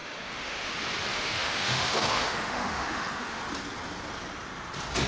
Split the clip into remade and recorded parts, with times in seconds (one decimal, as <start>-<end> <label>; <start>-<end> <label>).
0.0-0.7 remade; 0.7-1.1 recorded; 1.1-3.4 remade; 3.4-5.1 recorded